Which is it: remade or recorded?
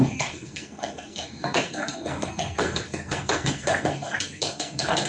remade